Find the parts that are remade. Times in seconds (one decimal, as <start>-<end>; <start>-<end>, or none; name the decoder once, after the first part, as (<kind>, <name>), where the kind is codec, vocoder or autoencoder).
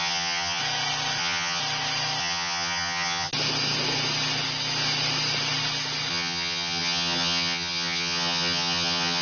0.0-0.6 (vocoder, HiFi-GAN); 1.2-1.6; 2.2-3.3; 6.1-9.2